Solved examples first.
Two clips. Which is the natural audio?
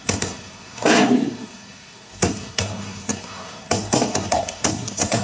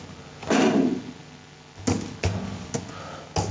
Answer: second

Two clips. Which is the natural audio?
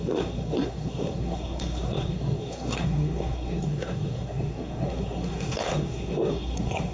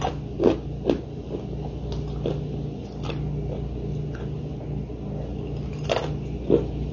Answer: second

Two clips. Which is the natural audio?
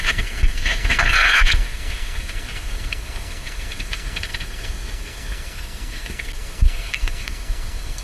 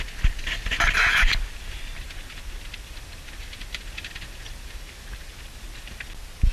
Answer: second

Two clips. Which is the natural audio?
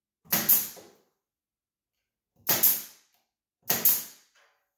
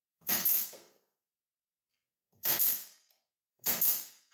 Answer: first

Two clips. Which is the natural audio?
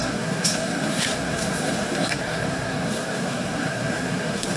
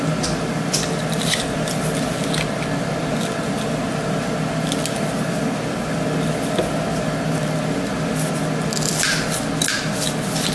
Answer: second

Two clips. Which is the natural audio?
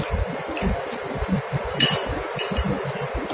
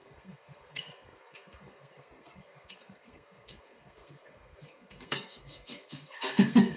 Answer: first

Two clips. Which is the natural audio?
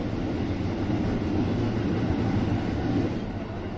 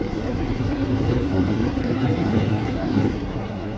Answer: first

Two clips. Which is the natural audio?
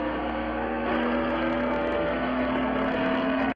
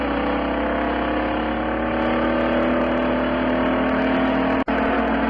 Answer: second